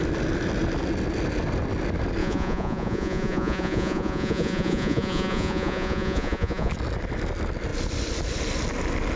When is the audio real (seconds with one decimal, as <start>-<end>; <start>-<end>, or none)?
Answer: 0.0-2.2; 6.7-9.2